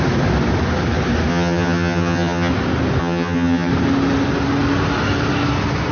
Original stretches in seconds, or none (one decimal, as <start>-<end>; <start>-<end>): 0.0-1.3; 2.5-3.0; 3.7-5.9